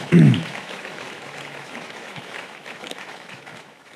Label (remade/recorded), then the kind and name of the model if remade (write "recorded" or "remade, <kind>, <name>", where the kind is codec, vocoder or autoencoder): remade, autoencoder, DAC-VAE